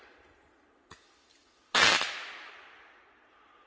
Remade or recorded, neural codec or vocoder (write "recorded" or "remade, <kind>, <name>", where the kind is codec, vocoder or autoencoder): recorded